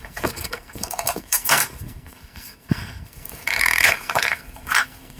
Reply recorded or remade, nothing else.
remade